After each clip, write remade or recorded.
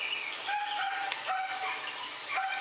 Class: recorded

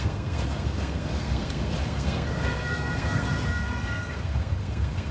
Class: remade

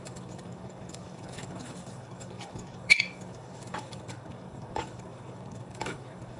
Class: remade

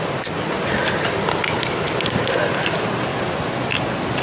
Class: recorded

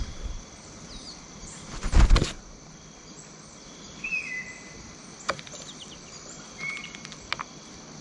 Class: recorded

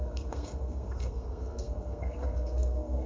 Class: remade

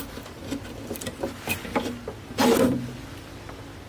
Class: remade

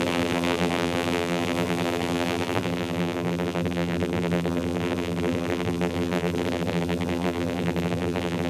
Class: remade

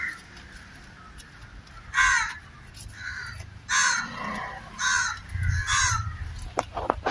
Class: recorded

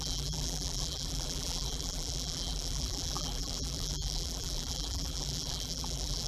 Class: remade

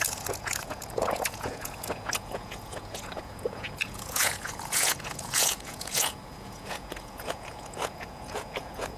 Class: remade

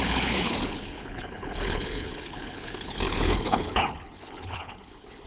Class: remade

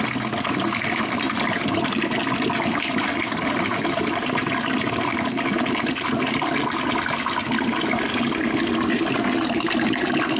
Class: recorded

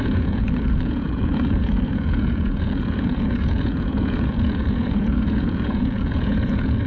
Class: remade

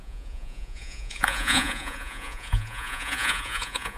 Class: remade